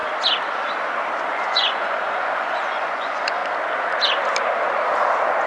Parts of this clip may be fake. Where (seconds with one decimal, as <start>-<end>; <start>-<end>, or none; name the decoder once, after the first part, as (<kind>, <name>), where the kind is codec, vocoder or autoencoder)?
1.2-3.4 (vocoder, Vocos)